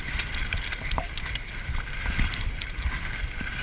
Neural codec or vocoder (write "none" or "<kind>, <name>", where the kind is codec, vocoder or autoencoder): vocoder, BigVGAN v2